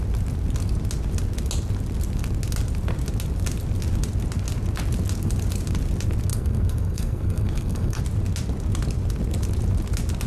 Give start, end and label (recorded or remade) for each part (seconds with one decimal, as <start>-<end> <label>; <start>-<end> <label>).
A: 0.0-6.3 recorded; 6.3-8.0 remade; 8.0-10.3 recorded